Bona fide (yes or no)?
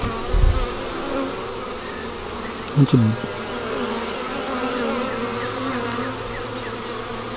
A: yes